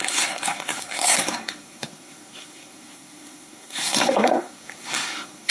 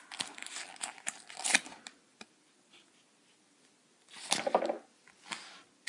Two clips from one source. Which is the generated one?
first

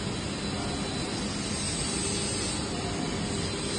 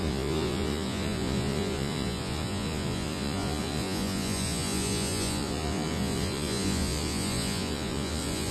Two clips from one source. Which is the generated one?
second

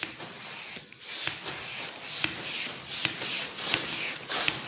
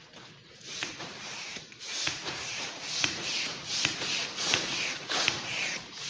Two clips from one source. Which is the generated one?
second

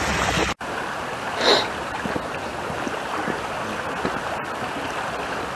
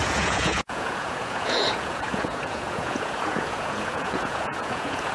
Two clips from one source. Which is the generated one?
second